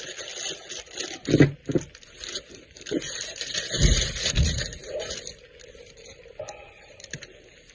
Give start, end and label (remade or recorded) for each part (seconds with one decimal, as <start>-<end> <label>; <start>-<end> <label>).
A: 0.0-1.6 recorded; 1.6-5.1 remade; 5.1-6.6 recorded; 6.6-7.2 remade; 7.2-7.7 recorded